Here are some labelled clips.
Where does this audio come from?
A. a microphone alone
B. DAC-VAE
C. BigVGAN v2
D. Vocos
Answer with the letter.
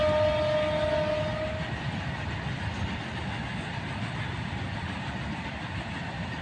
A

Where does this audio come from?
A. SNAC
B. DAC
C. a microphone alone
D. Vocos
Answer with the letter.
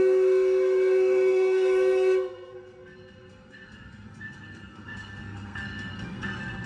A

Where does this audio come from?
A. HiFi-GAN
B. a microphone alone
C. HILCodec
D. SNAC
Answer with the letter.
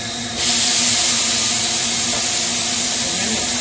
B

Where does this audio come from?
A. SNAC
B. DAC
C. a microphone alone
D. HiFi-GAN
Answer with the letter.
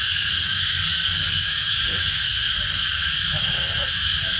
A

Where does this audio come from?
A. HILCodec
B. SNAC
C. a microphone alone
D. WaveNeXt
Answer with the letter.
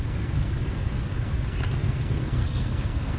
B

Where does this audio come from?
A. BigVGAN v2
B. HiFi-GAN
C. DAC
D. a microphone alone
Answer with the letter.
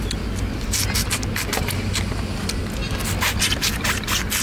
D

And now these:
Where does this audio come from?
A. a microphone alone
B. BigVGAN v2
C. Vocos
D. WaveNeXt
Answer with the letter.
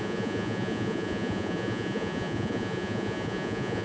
C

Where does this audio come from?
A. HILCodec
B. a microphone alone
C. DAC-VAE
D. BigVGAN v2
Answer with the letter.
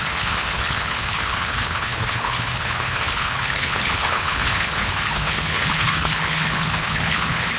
A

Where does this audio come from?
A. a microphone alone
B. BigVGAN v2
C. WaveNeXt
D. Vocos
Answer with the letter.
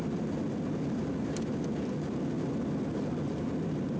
A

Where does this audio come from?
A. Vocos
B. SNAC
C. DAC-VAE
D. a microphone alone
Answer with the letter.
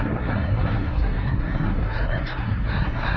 B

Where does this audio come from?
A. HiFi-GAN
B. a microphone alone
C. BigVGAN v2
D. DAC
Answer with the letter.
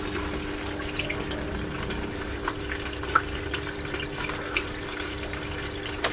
B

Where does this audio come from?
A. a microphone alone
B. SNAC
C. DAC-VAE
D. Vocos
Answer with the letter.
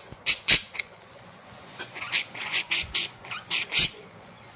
D